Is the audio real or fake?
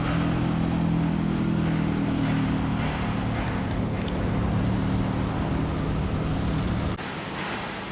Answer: real